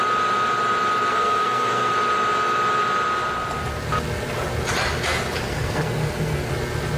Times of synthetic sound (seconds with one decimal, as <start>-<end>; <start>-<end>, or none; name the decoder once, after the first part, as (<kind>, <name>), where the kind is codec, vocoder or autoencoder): 1.1-1.9 (codec, SNAC); 5.5-6.5